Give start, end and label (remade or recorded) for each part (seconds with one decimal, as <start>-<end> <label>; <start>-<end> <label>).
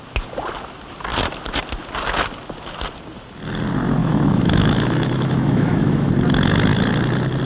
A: 0.0-4.0 recorded; 4.0-6.1 remade; 6.1-7.4 recorded